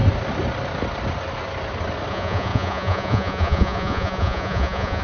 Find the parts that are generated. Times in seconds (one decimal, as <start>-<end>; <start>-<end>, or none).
2.1-5.0